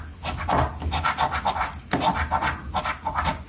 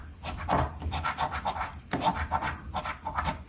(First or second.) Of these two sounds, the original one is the first